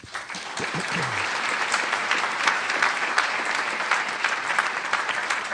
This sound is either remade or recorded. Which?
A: remade